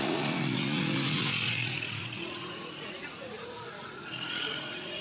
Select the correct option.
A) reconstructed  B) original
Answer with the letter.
A